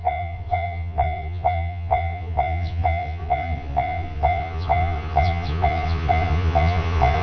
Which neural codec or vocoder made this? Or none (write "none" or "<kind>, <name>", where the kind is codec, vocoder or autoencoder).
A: vocoder, Vocos